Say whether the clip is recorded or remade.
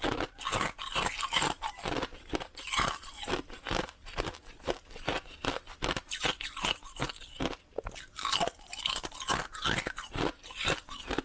recorded